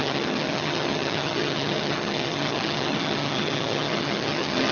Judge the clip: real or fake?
fake